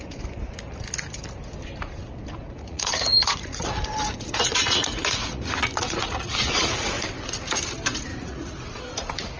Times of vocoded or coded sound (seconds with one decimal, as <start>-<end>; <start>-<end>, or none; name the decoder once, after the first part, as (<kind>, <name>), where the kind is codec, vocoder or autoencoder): 2.4-6.9 (vocoder, Vocos); 8.1-8.8